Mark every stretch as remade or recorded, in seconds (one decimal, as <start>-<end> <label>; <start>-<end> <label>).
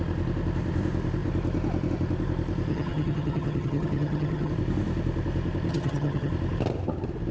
0.0-2.7 recorded; 2.7-4.5 remade; 4.5-5.7 recorded; 5.7-6.3 remade; 6.3-7.3 recorded